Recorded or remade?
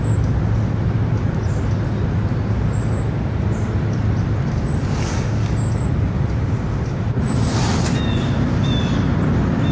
recorded